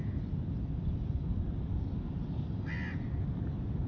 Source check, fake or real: real